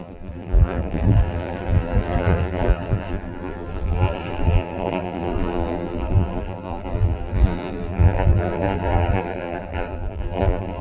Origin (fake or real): fake